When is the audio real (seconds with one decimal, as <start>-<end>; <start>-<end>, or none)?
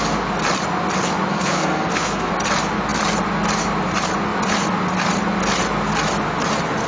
0.0-1.3; 2.3-6.9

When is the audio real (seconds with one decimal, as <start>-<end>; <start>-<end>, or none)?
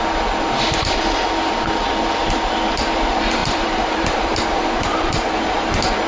0.0-3.4; 5.4-6.1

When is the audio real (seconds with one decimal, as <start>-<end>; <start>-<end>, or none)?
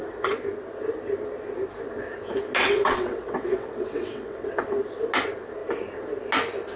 0.0-2.6; 4.5-6.8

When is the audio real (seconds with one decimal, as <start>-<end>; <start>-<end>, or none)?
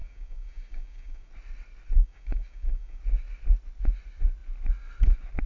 1.3-2.0; 3.0-5.5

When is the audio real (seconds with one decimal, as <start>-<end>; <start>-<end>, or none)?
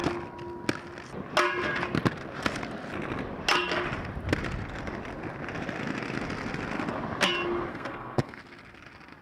0.0-7.7; 8.4-9.2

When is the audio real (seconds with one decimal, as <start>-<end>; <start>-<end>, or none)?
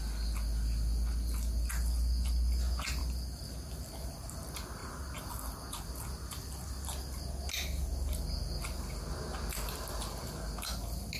0.0-11.2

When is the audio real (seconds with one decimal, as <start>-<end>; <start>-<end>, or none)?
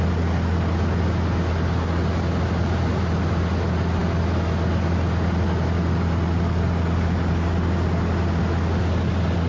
0.0-9.5